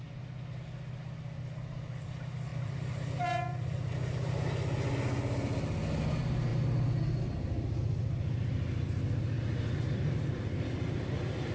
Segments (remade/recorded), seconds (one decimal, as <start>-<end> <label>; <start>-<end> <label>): 0.0-2.5 recorded; 2.5-3.9 remade; 3.9-11.5 recorded